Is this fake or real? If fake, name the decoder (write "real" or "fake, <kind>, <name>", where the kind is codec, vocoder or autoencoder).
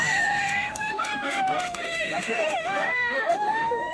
fake, autoencoder, DAC-VAE